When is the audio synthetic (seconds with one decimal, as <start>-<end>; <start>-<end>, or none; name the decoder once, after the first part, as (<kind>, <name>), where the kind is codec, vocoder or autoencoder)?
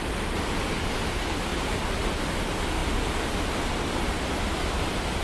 1.5-2.1 (vocoder, BigVGAN v2)